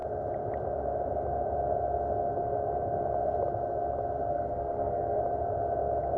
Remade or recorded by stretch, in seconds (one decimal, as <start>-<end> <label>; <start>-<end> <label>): 0.0-4.3 recorded; 4.3-5.2 remade; 5.2-6.2 recorded